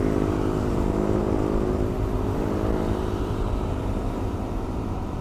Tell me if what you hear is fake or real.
fake